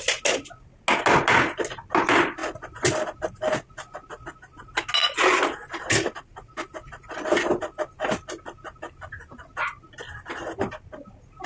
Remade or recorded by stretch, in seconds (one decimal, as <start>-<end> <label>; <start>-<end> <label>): 0.0-11.5 recorded